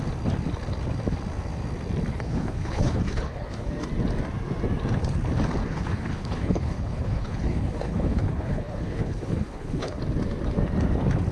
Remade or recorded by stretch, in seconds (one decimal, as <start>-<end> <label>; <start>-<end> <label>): 0.0-2.1 recorded; 2.1-3.7 remade; 3.7-5.6 recorded; 5.6-10.0 remade; 10.0-11.3 recorded